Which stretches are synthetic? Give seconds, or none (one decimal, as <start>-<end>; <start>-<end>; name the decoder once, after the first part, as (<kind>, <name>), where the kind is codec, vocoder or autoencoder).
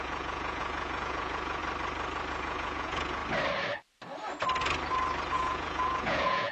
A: 0.0-1.6 (vocoder, Vocos); 2.3-3.2; 5.3-6.5